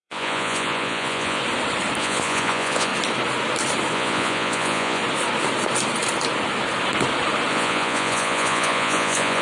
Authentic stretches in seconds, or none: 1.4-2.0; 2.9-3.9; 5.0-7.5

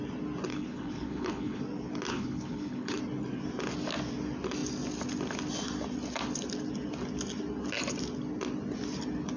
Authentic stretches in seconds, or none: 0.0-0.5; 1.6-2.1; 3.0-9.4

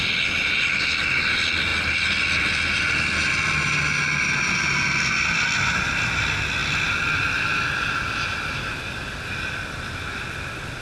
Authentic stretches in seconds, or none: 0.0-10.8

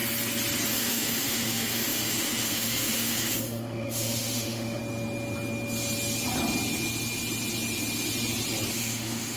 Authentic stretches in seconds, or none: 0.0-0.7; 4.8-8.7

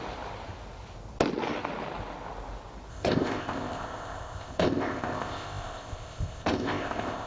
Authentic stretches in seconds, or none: 0.0-2.9

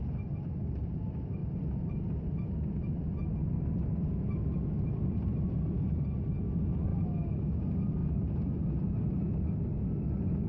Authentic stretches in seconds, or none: 0.0-6.9; 7.6-10.5